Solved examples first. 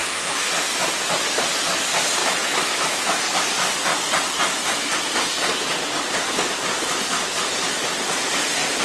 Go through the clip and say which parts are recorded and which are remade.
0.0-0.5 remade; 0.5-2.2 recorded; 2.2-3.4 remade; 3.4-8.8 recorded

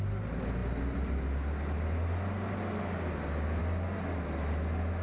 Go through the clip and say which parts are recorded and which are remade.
0.0-5.0 recorded

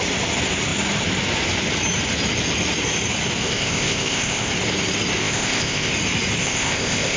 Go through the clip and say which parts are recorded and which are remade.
0.0-3.4 recorded; 3.4-4.5 remade; 4.5-5.2 recorded; 5.2-5.9 remade; 5.9-6.4 recorded; 6.4-7.2 remade

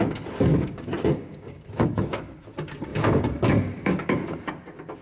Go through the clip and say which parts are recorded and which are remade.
0.0-0.5 recorded; 0.5-2.3 remade; 2.3-2.9 recorded; 2.9-4.2 remade; 4.2-5.0 recorded

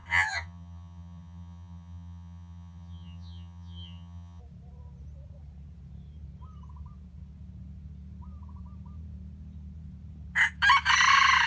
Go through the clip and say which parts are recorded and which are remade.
0.0-4.4 remade; 4.4-11.5 recorded